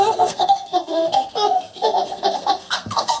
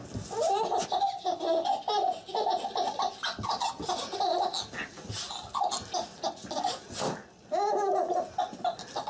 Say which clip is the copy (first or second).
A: first